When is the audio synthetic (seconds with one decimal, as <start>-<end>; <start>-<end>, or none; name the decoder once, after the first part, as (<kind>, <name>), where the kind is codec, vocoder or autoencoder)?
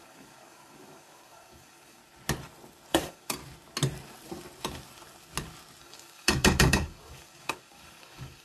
0.0-2.0 (codec, DAC); 2.9-3.4; 5.8-8.4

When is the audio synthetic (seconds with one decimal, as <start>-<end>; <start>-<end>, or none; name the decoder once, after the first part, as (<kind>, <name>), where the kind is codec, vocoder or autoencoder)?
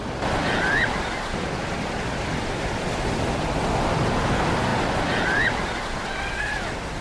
none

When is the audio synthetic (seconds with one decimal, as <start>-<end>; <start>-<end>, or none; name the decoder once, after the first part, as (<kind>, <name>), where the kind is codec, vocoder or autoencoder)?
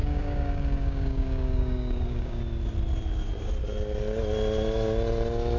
0.0-2.4 (codec, DAC)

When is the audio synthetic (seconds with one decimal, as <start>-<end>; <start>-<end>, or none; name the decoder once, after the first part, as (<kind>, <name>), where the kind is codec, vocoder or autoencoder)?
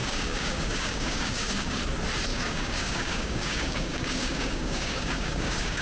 0.0-1.8 (codec, DAC); 2.3-5.8